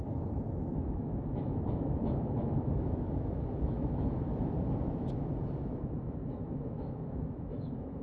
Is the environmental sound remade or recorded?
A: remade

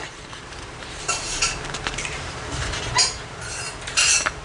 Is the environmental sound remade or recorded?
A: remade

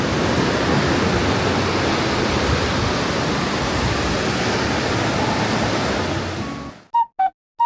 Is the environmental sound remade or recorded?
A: recorded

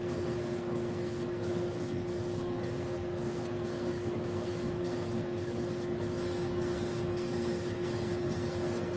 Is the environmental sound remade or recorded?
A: remade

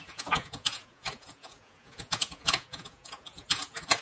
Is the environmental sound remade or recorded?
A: remade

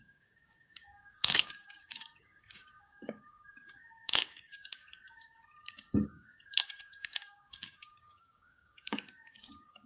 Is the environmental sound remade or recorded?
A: remade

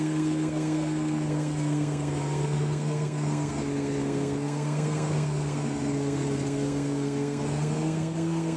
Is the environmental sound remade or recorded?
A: remade